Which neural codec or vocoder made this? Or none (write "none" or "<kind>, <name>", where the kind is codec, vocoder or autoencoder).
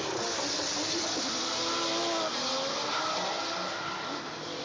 none